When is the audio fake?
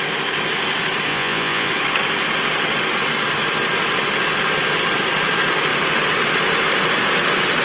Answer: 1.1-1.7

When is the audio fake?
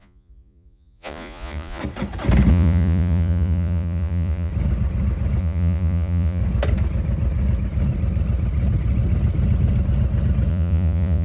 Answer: 0.0-1.8; 2.5-4.5; 5.4-6.4; 10.5-11.2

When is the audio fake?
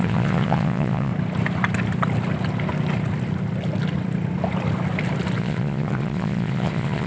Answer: 0.0-1.1; 5.4-7.1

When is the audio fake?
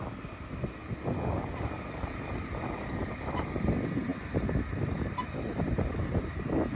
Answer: none